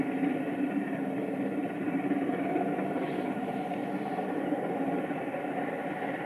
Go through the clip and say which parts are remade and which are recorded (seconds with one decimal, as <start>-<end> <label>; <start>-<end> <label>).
0.0-1.6 recorded; 1.6-2.4 remade; 2.4-6.3 recorded